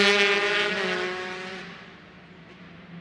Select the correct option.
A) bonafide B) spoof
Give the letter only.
A